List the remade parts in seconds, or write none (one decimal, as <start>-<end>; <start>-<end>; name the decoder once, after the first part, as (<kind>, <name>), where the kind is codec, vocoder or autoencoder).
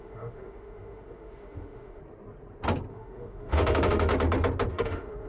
0.0-2.0 (autoencoder, DAC-VAE); 2.9-4.1; 4.7-5.3